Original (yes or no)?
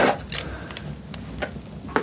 yes